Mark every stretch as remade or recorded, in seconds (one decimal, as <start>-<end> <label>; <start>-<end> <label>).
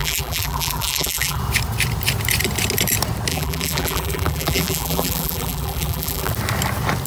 0.0-1.4 remade; 1.4-3.3 recorded; 3.3-6.3 remade; 6.3-7.1 recorded